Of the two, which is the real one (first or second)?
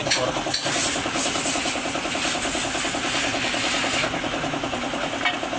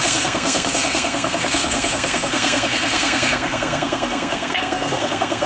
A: first